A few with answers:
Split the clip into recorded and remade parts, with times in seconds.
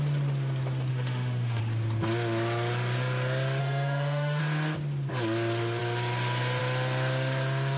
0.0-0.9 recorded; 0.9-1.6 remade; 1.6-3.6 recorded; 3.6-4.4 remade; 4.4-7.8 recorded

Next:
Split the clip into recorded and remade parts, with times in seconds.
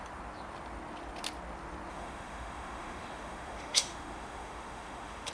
0.0-1.9 recorded; 1.9-5.3 remade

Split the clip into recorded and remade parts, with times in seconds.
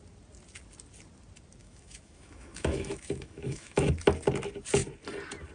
0.0-1.6 recorded; 1.6-3.9 remade; 3.9-5.5 recorded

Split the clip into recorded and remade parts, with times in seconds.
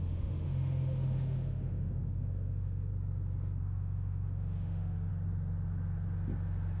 0.0-2.9 remade; 2.9-3.6 recorded; 3.6-5.1 remade; 5.1-6.8 recorded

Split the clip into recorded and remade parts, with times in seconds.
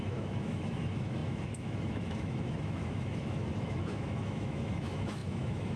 0.0-5.8 remade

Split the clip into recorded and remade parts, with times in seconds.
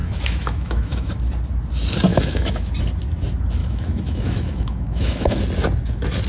0.0-1.1 remade; 1.1-2.1 recorded; 2.1-2.7 remade; 2.7-3.6 recorded; 3.6-5.4 remade; 5.4-6.3 recorded